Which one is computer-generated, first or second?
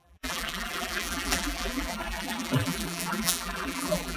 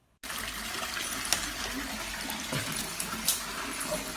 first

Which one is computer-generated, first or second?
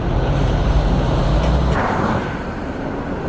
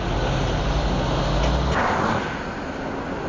first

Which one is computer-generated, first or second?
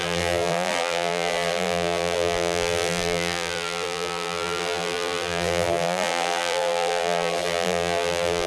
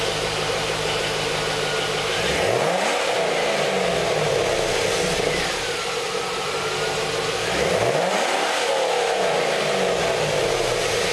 first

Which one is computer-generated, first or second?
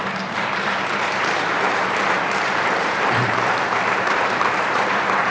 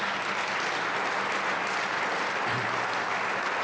first